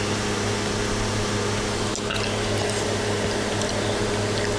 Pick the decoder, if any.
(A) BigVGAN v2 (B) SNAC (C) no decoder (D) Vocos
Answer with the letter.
C